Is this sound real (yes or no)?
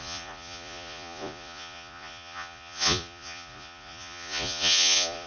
no